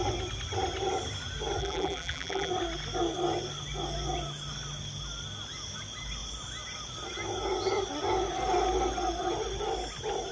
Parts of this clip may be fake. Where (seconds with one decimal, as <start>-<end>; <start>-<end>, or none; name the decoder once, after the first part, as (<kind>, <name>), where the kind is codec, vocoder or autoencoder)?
1.6-2.5 (vocoder, BigVGAN v2)